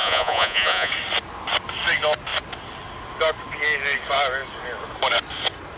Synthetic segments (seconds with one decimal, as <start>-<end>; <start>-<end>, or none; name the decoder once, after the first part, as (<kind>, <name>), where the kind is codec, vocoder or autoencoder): 0.0-0.9 (vocoder, Vocos)